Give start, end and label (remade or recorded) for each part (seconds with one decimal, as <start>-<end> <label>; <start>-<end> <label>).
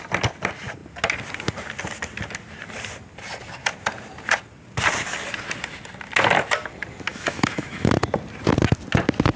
0.0-7.1 recorded; 7.1-7.9 remade; 7.9-9.4 recorded